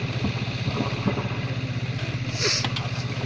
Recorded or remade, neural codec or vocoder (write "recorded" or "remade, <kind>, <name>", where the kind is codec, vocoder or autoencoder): recorded